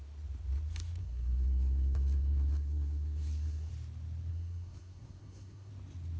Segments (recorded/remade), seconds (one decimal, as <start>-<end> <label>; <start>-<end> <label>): 0.0-1.0 recorded; 1.0-3.7 remade; 3.7-4.3 recorded; 4.3-5.7 remade; 5.7-6.2 recorded